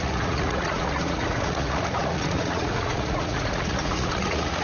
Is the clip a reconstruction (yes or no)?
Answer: yes